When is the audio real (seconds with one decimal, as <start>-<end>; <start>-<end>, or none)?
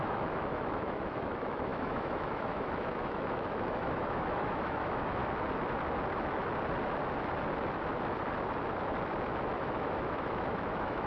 5.2-9.6